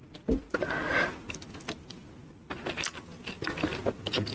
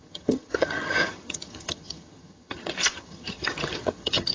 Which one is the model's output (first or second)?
second